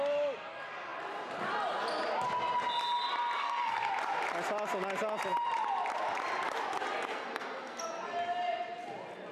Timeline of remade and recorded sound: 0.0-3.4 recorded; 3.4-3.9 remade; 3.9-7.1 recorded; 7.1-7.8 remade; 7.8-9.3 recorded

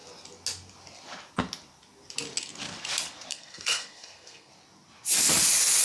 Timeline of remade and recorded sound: 0.0-3.3 recorded; 3.3-4.5 remade; 4.5-5.8 recorded

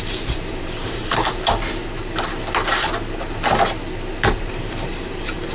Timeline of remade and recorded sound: 0.0-1.2 remade; 1.2-4.5 recorded; 4.5-5.5 remade

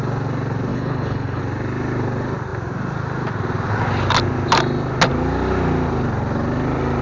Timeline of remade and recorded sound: 0.0-0.7 recorded; 0.7-1.4 remade; 1.4-7.0 recorded

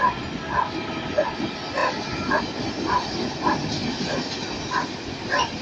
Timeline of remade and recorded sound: 0.0-1.8 recorded; 1.8-2.4 remade; 2.4-5.6 recorded

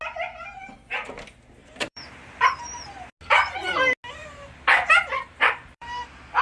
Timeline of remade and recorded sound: 0.0-1.6 recorded; 1.6-2.6 remade; 2.6-4.2 recorded; 4.2-5.9 remade; 5.9-6.4 recorded

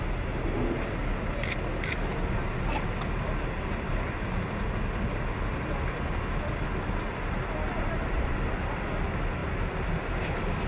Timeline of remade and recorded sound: 0.0-10.7 recorded

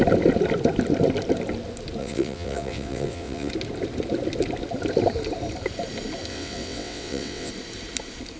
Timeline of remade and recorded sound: 0.0-2.0 recorded; 2.0-3.5 remade; 3.5-6.3 recorded; 6.3-7.5 remade; 7.5-8.4 recorded